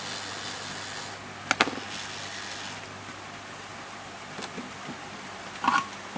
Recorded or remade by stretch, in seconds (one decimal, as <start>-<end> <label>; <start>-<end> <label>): 0.0-6.2 recorded

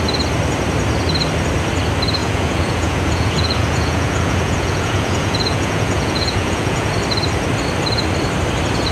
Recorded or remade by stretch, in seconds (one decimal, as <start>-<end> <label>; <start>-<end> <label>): 0.0-2.2 recorded; 2.2-6.9 remade; 6.9-8.9 recorded

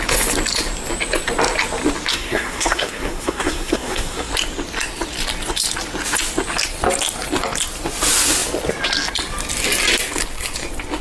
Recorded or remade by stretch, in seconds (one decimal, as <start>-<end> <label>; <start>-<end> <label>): 0.0-2.1 recorded; 2.1-4.3 remade; 4.3-11.0 recorded

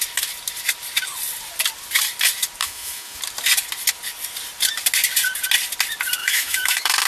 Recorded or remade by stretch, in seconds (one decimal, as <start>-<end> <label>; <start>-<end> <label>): 0.0-2.6 recorded; 2.6-3.2 remade; 3.2-6.2 recorded; 6.2-7.1 remade

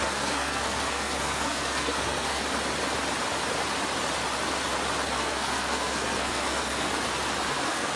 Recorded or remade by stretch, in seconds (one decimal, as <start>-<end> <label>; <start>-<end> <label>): 0.0-2.4 remade; 2.4-5.1 recorded; 5.1-6.9 remade; 6.9-7.5 recorded; 7.5-8.0 remade

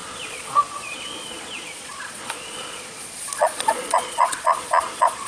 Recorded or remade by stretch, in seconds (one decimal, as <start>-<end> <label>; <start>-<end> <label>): 0.0-5.3 remade

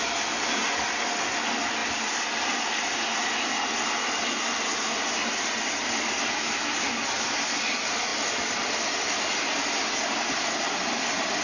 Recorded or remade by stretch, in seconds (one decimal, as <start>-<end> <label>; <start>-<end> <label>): 0.0-11.4 recorded